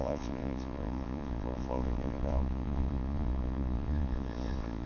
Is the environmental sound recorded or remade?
remade